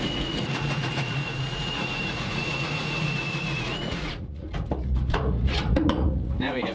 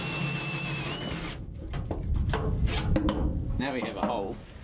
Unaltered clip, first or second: second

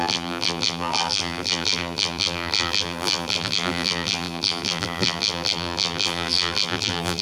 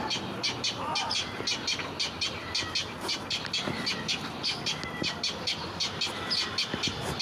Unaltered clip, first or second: second